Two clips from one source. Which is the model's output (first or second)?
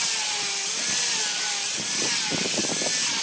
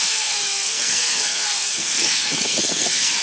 second